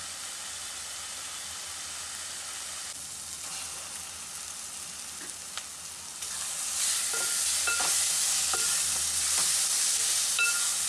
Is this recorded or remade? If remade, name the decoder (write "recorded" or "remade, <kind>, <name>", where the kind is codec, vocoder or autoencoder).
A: recorded